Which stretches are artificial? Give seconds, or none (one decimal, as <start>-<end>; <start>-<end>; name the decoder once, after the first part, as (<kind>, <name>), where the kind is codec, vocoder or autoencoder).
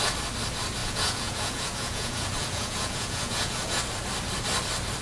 0.8-3.8 (vocoder, Vocos)